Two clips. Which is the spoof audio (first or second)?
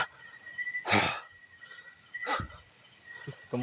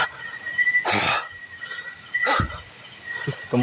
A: first